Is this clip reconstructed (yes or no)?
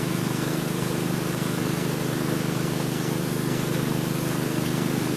yes